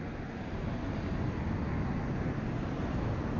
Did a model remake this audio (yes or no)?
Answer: no